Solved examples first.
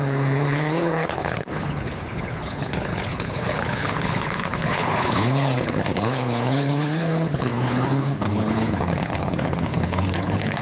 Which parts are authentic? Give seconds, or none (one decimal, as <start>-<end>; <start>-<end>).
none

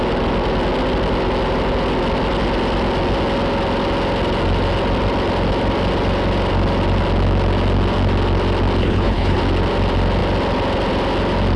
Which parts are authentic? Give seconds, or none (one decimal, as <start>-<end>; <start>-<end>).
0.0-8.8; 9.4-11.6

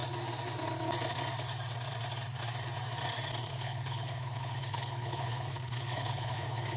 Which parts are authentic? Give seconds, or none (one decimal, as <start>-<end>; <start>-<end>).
0.0-3.5

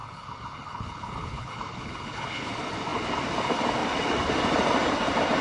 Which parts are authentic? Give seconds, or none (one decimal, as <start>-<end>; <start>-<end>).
2.5-5.4

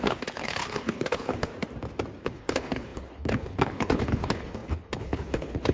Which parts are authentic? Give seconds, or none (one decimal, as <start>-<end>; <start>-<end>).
1.5-2.2

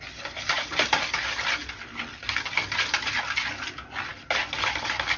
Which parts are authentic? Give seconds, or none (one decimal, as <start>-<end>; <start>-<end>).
0.0-5.2

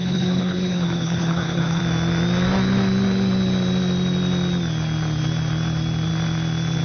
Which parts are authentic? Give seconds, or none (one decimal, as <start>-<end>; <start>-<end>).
1.8-6.8